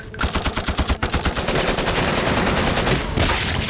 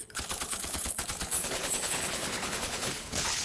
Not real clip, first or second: second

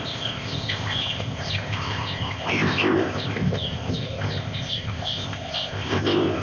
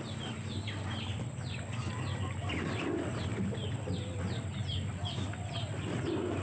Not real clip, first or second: first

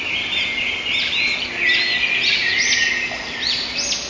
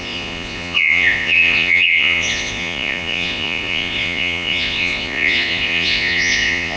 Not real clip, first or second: second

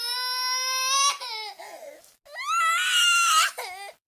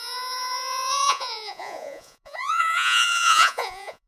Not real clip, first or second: second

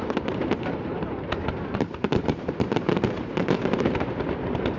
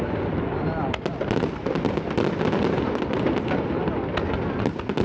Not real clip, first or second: first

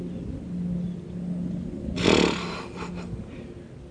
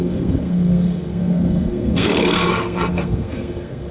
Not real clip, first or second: second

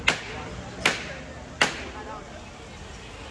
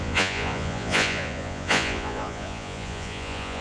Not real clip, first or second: second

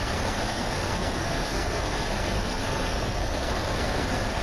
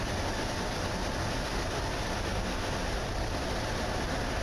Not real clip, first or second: first